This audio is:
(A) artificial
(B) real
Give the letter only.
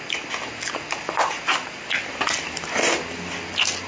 B